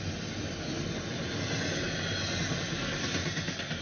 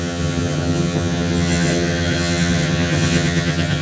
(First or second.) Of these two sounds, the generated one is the second